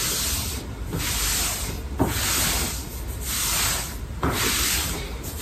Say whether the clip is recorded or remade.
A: recorded